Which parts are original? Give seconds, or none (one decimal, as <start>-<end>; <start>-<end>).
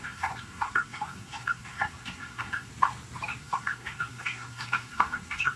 2.7-3.4